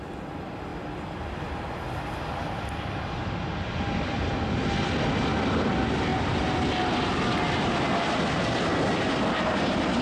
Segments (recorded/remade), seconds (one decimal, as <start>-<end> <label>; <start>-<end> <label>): 0.0-10.0 recorded